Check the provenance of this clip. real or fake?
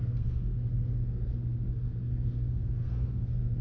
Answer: fake